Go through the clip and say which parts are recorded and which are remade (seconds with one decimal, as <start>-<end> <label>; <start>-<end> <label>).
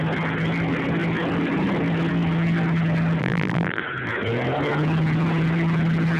0.0-3.2 recorded; 3.2-3.8 remade; 3.8-6.2 recorded